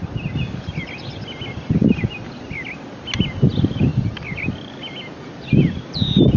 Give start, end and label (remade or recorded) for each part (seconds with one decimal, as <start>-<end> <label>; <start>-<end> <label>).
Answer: 0.0-3.9 recorded; 3.9-4.7 remade; 4.7-6.4 recorded